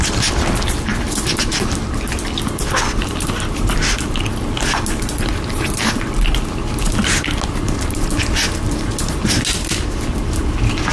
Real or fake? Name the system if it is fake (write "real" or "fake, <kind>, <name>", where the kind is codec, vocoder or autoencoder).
real